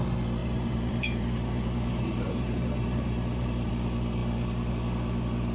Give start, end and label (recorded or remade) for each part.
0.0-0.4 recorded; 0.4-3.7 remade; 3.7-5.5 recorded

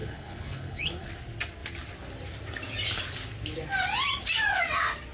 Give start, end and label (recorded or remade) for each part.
0.0-1.1 remade; 1.1-5.1 recorded

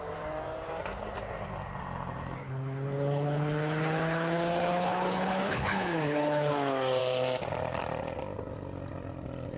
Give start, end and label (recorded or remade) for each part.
0.0-2.4 recorded; 2.4-6.5 remade; 6.5-9.6 recorded